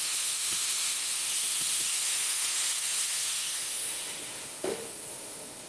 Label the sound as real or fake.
fake